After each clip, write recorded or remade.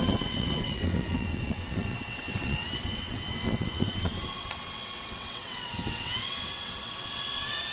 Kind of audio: remade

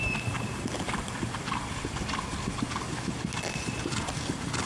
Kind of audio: recorded